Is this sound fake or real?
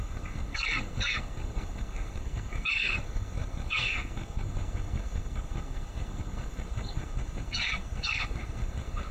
fake